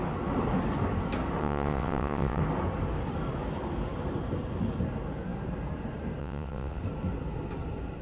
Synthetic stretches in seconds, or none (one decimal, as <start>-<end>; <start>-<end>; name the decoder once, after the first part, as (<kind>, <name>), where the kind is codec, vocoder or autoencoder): 1.4-2.4 (vocoder, WaveNeXt); 6.2-6.8

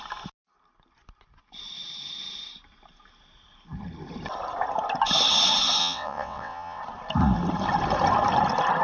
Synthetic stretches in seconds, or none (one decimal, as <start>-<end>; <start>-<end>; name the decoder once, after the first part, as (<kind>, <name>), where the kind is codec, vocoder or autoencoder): 5.8-6.8 (vocoder, WaveNeXt)

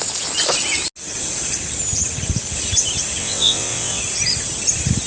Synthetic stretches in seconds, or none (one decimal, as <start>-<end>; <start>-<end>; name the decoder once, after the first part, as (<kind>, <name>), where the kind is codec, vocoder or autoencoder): 3.2-4.0 (vocoder, WaveNeXt)

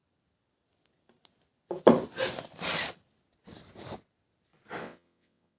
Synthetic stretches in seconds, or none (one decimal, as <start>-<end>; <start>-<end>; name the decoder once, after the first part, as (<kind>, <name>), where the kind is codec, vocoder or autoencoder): 4.8-5.6 (vocoder, WaveNeXt)